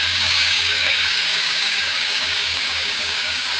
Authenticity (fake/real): fake